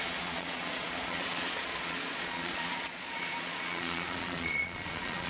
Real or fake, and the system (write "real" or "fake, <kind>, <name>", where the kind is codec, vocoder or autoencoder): fake, vocoder, Vocos